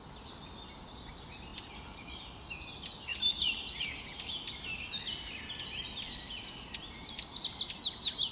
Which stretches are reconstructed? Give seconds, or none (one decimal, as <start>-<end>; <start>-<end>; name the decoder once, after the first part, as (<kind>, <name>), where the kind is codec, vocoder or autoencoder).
none